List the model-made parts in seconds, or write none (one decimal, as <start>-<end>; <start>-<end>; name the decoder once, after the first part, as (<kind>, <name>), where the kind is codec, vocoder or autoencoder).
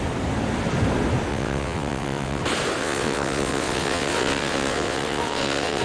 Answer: 1.3-2.4 (vocoder, WaveNeXt); 2.8-5.8